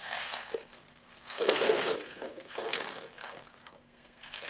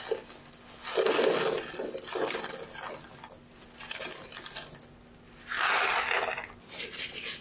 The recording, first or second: second